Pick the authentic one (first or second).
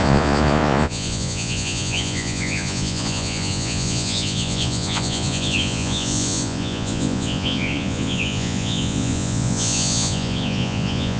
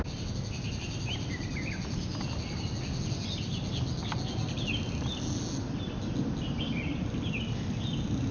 second